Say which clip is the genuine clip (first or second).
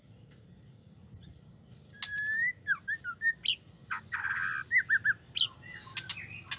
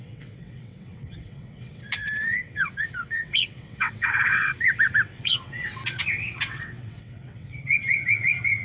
first